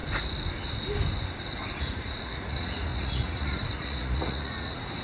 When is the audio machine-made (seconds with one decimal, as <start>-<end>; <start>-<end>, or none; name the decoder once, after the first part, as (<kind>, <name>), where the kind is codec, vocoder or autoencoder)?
1.8-5.0 (vocoder, Vocos)